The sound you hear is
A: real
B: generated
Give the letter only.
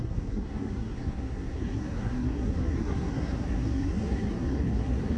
B